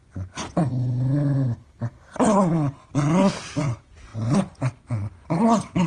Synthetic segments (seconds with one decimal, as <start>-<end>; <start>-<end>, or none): 0.0-0.7; 3.6-5.9